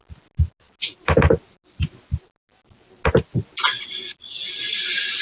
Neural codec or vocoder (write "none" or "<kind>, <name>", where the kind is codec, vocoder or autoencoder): none